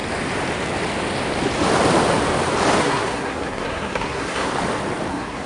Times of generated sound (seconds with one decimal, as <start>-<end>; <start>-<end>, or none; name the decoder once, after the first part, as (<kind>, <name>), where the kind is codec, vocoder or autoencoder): 2.8-4.5 (codec, SNAC); 5.1-5.5